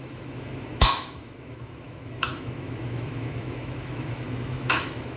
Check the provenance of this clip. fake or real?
fake